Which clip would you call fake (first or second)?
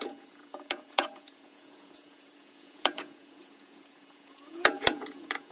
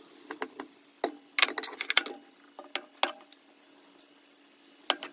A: first